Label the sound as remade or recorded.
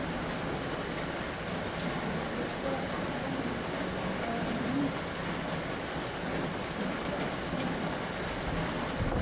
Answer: recorded